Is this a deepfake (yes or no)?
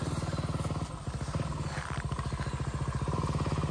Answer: yes